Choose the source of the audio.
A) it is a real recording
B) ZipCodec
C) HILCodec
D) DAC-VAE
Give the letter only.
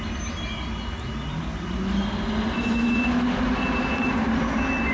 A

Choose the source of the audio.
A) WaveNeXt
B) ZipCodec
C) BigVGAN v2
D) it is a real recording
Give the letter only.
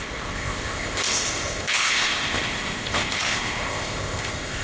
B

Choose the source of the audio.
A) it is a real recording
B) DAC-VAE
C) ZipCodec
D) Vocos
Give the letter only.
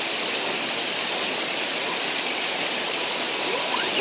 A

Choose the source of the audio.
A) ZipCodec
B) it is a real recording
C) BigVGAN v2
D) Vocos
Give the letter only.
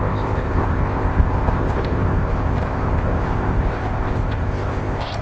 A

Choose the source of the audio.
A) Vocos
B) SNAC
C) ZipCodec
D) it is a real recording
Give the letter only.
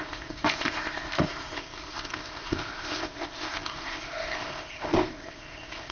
C